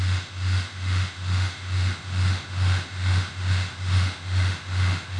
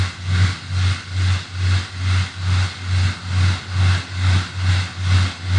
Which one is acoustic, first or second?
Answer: second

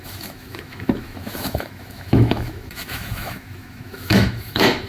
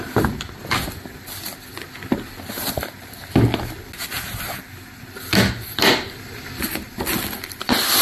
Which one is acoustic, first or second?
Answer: second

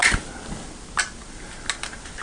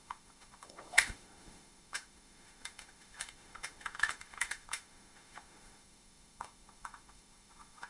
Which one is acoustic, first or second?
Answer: first